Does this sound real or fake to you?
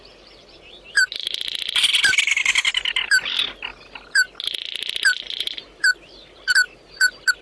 real